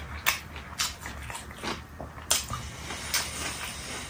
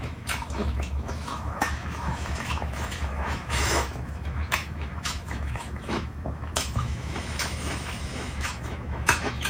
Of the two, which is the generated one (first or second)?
second